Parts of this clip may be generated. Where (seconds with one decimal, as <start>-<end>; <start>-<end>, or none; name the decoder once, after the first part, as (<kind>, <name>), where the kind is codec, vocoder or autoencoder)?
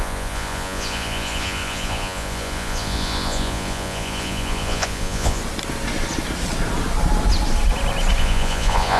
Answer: 0.0-5.4 (vocoder, Vocos); 8.2-9.0